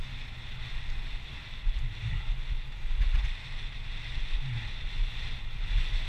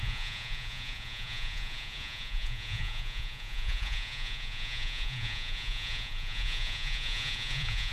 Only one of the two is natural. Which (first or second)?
first